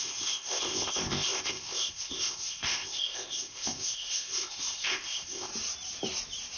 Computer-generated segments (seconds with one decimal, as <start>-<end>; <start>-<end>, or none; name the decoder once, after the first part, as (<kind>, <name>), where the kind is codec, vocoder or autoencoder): 0.0-5.5 (codec, ZipCodec)